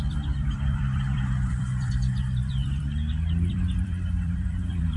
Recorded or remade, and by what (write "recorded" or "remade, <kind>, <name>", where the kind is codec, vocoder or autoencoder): remade, vocoder, BigVGAN v2